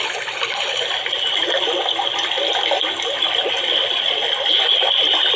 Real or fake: real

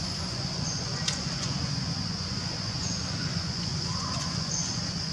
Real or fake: fake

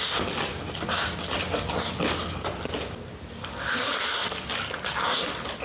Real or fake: real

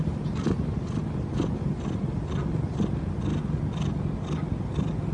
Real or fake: real